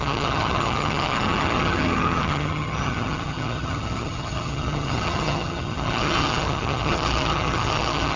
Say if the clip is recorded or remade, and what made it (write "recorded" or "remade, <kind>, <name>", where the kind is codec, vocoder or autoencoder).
remade, vocoder, HiFi-GAN